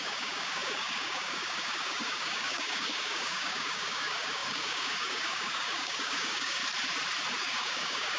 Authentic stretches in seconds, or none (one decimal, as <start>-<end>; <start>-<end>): 6.6-7.4